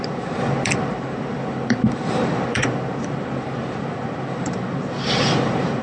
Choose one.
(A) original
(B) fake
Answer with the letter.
B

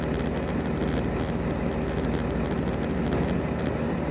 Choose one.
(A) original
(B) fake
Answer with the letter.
A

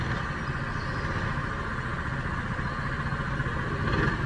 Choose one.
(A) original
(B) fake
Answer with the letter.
A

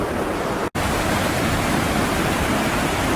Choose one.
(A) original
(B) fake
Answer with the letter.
A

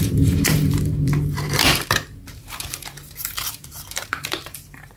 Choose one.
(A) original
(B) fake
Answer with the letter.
B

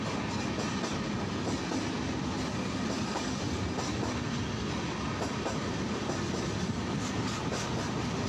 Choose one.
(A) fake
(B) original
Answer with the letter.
B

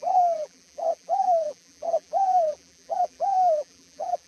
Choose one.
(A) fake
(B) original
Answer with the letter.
A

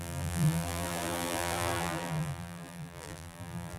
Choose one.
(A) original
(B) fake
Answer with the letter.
B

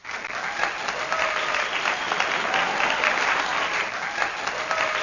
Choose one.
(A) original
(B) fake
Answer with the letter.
B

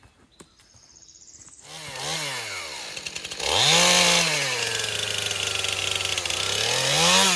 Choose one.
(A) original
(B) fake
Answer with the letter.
A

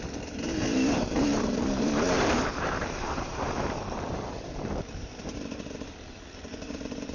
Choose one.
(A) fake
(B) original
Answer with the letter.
A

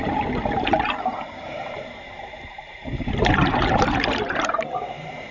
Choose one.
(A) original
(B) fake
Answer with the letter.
B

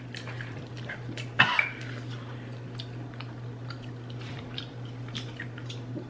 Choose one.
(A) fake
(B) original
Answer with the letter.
A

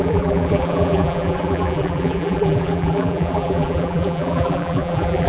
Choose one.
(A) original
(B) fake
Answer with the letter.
B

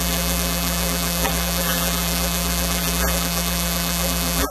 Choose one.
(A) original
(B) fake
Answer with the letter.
B